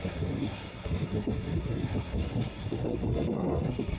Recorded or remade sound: remade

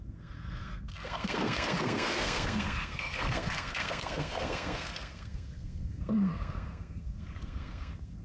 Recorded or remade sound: remade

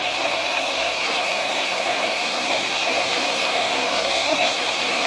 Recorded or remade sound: remade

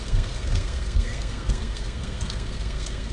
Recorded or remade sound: remade